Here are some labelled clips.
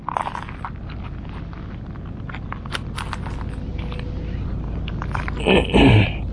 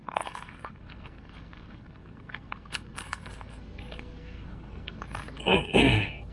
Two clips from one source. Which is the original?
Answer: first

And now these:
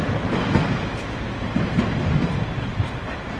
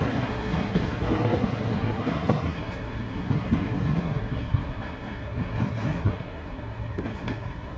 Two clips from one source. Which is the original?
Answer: first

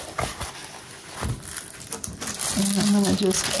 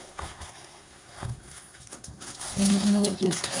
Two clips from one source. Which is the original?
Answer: first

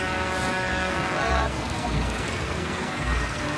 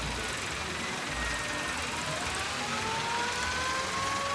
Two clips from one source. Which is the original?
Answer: second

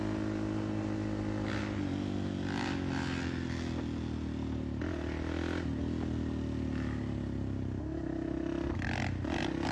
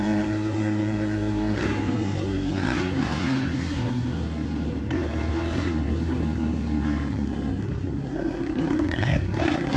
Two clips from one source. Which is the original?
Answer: first